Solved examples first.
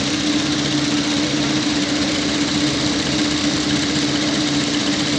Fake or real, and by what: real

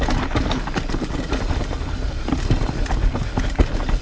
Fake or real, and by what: real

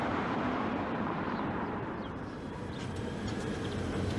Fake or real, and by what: fake, vocoder, BigVGAN v2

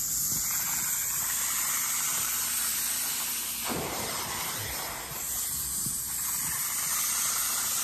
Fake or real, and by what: fake, vocoder, BigVGAN v2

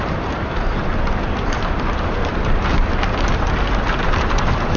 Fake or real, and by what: fake, vocoder, BigVGAN v2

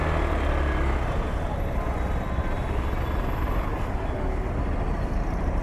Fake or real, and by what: real